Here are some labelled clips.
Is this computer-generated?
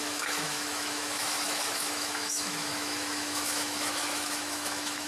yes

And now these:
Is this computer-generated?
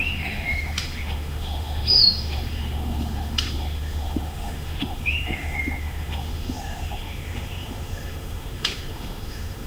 yes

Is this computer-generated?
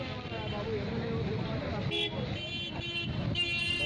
no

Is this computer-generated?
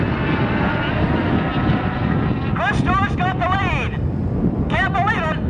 no